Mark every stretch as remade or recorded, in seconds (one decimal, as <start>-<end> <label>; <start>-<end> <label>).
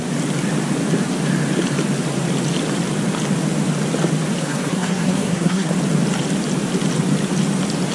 0.0-4.4 recorded; 4.4-5.7 remade; 5.7-7.9 recorded